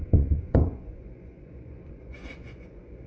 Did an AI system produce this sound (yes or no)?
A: yes